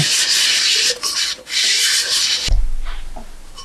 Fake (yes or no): no